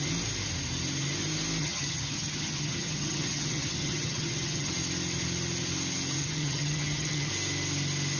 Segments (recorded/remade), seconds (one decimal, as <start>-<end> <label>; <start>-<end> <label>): 0.0-1.6 recorded; 1.6-4.7 remade; 4.7-6.2 recorded; 6.2-7.3 remade; 7.3-8.2 recorded